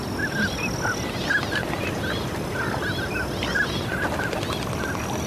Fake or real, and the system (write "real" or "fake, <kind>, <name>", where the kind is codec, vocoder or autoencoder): real